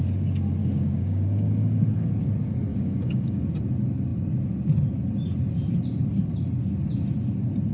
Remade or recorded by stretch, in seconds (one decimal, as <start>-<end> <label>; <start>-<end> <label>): 0.0-0.6 recorded; 0.6-2.3 remade; 2.3-2.7 recorded; 2.7-3.5 remade; 3.5-7.7 recorded